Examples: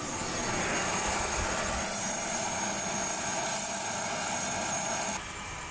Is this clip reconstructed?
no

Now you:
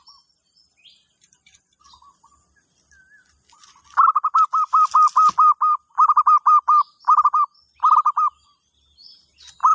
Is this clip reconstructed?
no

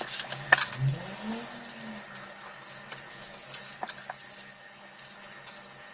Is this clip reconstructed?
no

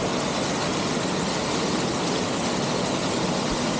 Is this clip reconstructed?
no